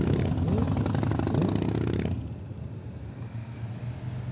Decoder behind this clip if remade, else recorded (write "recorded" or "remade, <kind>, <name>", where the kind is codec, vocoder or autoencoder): recorded